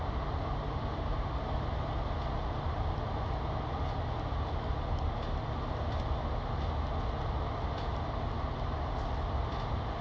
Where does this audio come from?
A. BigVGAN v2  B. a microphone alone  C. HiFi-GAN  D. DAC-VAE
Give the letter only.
B